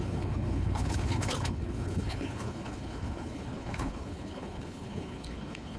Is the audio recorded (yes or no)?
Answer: no